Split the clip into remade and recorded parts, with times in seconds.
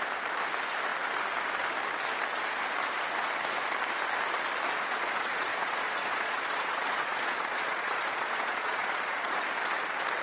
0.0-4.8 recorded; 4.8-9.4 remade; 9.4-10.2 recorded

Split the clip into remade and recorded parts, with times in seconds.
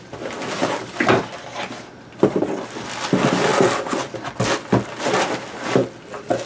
0.0-6.5 recorded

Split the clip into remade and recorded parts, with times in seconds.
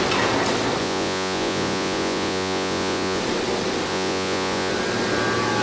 0.0-0.8 recorded; 0.8-3.2 remade; 3.2-3.9 recorded; 3.9-4.7 remade; 4.7-5.6 recorded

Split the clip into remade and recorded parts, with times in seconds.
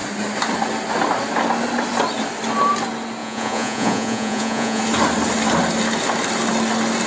0.0-3.2 recorded; 3.2-4.8 remade; 4.8-7.1 recorded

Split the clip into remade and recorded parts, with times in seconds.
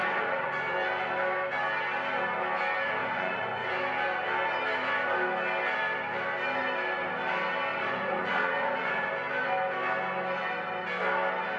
0.0-0.5 remade; 0.5-3.0 recorded; 3.0-3.7 remade; 3.7-7.7 recorded; 7.7-9.1 remade; 9.1-11.6 recorded